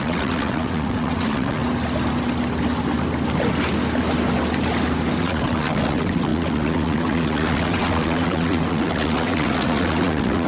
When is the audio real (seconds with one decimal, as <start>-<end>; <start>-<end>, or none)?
1.6-5.2

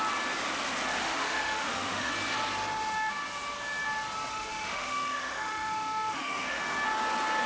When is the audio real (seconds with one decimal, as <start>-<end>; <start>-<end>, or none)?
0.0-1.0; 2.1-4.3; 6.6-7.5

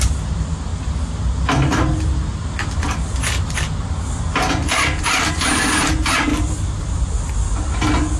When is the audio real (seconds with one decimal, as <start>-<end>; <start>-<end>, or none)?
0.0-8.2

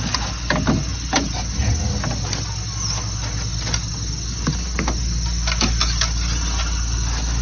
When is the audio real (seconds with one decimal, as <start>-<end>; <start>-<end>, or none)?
0.0-7.4

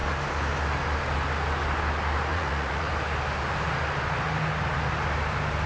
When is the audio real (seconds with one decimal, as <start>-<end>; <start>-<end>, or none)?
0.0-2.3; 2.9-5.7

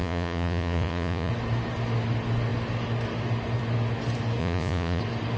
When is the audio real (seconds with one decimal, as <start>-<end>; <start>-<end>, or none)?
1.3-4.4; 5.0-5.4

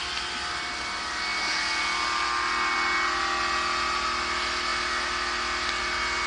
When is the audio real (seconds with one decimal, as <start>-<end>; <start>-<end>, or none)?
0.0-6.3

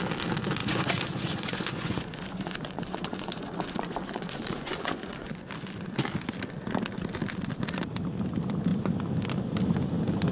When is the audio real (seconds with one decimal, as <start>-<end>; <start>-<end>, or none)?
0.0-0.6; 5.5-10.3